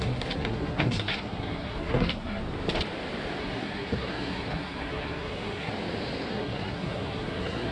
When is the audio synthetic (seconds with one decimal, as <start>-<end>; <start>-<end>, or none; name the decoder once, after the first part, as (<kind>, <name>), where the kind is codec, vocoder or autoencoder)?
0.0-2.4 (codec, SNAC); 3.4-5.7; 6.3-7.7